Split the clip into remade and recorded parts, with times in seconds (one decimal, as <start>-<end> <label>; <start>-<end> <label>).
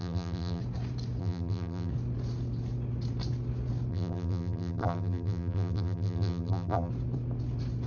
0.0-0.6 remade; 0.6-1.2 recorded; 1.2-1.9 remade; 1.9-3.9 recorded; 3.9-6.9 remade; 6.9-7.9 recorded